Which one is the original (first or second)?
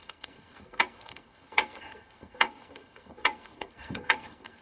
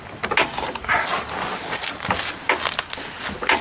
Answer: second